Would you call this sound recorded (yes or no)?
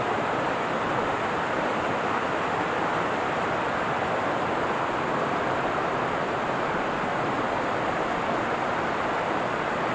yes